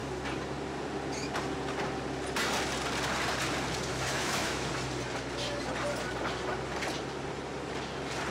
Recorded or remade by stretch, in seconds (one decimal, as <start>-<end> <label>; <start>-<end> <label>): 0.0-3.9 recorded; 3.9-4.7 remade; 4.7-8.3 recorded